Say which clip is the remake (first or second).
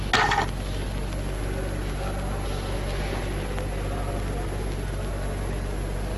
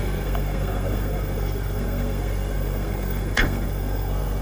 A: second